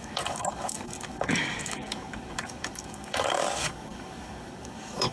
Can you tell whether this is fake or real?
fake